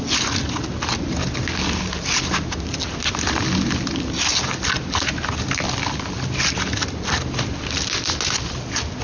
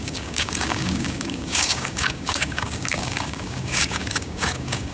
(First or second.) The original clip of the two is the first